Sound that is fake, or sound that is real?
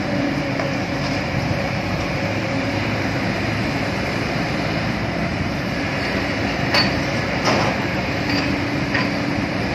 fake